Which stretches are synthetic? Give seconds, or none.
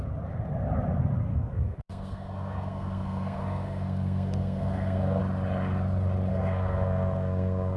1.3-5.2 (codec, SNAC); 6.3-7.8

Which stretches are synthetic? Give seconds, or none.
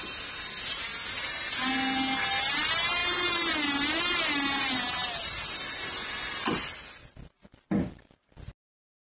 none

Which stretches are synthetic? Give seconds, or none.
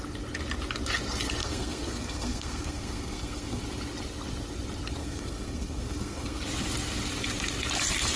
1.4-3.6 (codec, SNAC); 5.0-6.4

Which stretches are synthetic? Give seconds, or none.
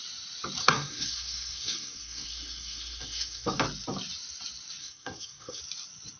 0.6-3.6 (codec, SNAC); 4.8-5.6